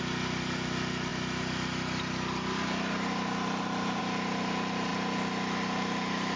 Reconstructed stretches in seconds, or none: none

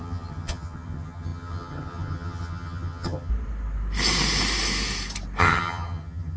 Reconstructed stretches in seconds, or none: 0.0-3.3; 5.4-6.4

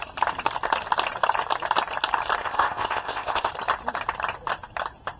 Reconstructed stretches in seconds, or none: 2.4-3.5

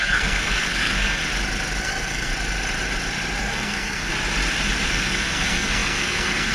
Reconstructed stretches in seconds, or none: 0.0-1.2; 1.8-2.3; 3.4-4.1; 4.9-6.5

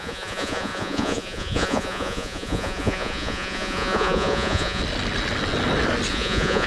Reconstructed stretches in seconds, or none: 0.0-4.8; 6.1-6.7